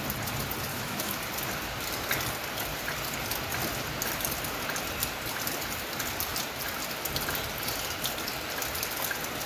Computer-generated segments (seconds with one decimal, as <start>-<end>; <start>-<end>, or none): 0.7-1.2